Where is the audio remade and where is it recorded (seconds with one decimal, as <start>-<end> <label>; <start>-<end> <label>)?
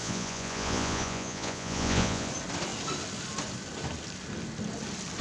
0.0-2.3 remade; 2.3-5.2 recorded